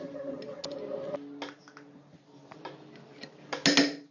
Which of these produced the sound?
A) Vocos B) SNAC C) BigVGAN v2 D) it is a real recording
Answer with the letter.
D